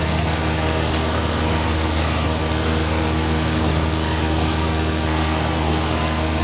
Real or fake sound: fake